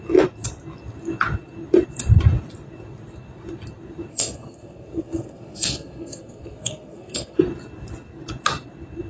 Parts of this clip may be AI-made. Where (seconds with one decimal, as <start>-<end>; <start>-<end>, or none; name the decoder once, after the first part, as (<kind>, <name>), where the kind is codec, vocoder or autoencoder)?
4.1-7.4 (codec, SNAC)